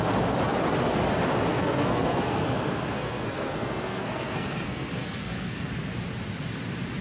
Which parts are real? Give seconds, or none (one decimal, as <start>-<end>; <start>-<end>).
0.0-1.5; 5.7-7.0